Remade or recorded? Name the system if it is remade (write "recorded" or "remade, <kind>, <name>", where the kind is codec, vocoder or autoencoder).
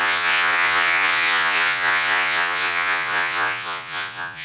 remade, vocoder, Vocos